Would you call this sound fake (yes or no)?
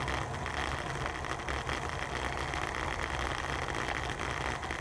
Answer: no